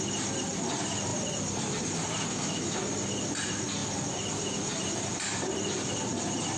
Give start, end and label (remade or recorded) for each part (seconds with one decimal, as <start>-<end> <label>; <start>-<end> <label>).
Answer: 0.0-2.3 recorded; 2.3-2.8 remade; 2.8-6.6 recorded